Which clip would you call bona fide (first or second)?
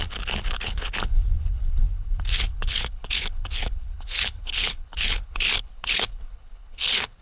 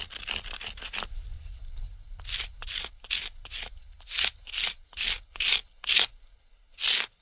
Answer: second